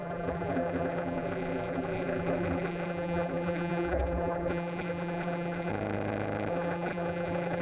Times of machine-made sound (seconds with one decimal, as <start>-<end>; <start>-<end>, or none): 0.0-5.7; 6.5-7.6